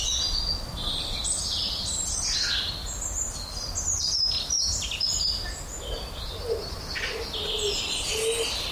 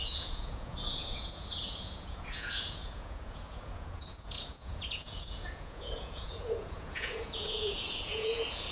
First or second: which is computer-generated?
second